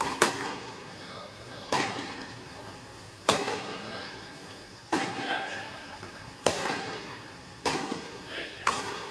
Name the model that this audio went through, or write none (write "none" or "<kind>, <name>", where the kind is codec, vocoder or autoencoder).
codec, SNAC